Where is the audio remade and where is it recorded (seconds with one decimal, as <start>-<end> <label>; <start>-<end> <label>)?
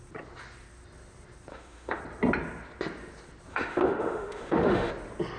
0.0-1.5 recorded; 1.5-2.0 remade; 2.0-3.5 recorded; 3.5-4.9 remade; 4.9-5.4 recorded